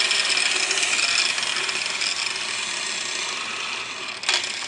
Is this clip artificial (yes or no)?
no